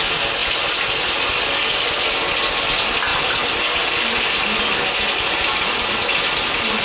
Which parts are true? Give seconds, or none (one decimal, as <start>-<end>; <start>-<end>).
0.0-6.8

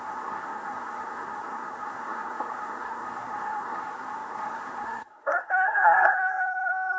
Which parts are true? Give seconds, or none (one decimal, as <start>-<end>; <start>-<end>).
none

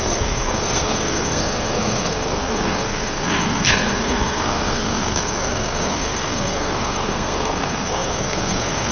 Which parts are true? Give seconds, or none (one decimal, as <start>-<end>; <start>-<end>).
none

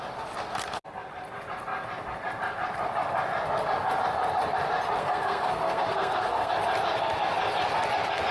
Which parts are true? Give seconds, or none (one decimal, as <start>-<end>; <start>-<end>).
0.0-5.0; 6.5-8.3

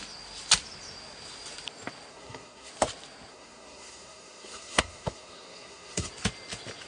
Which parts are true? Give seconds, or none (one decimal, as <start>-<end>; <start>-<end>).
0.0-2.1; 2.7-3.3; 6.1-6.9

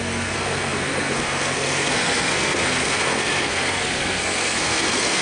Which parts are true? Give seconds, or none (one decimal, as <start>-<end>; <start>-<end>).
none